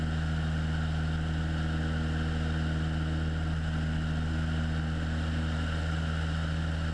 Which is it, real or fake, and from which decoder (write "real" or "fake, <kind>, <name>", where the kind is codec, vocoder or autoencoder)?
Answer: real